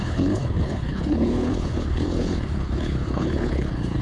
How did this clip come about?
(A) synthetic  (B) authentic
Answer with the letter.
A